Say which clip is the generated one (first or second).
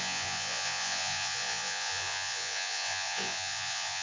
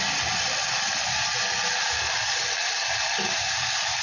first